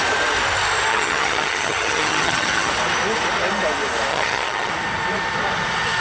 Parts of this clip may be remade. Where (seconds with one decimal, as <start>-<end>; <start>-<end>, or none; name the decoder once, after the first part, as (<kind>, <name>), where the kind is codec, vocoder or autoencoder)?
0.9-2.7 (vocoder, HiFi-GAN); 4.1-4.7